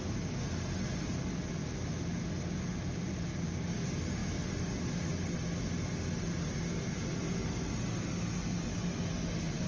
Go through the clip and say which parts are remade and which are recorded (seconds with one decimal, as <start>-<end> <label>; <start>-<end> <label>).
0.0-9.7 recorded